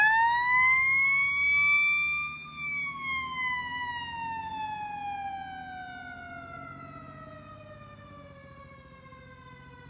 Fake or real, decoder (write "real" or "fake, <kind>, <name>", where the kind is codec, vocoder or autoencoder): real